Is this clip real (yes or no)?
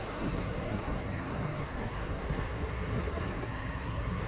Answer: no